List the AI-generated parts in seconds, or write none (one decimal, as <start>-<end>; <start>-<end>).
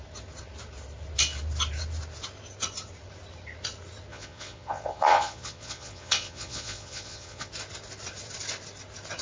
4.1-7.5